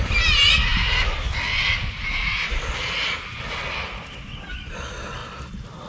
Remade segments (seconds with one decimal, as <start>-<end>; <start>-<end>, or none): none